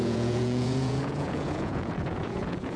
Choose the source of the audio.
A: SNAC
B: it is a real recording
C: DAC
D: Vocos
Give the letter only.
D